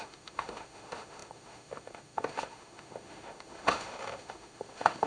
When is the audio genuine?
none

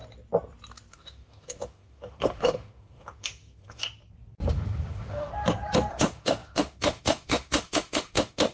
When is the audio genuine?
0.0-0.9; 3.8-4.5; 5.3-5.9

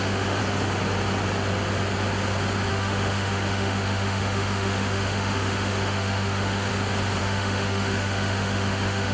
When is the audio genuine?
0.4-2.7; 6.7-7.2